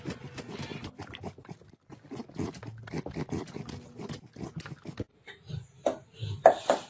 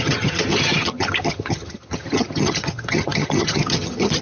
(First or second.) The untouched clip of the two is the first